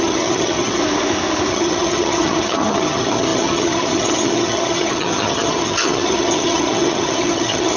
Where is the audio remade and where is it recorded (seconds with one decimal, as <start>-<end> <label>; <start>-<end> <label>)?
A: 0.0-0.8 remade; 0.8-1.5 recorded; 1.5-7.8 remade